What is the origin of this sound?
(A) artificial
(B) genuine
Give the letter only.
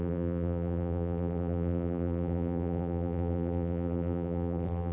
A